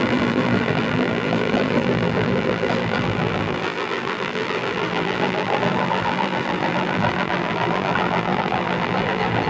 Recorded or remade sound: remade